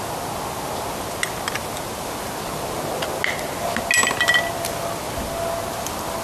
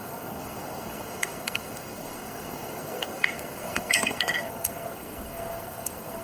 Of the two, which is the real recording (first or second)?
first